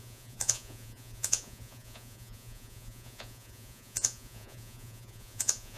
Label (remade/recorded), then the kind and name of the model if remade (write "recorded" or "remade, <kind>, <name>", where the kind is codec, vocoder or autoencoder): remade, vocoder, Vocos